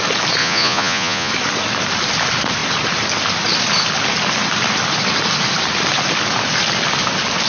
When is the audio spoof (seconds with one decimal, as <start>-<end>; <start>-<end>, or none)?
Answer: 0.4-1.3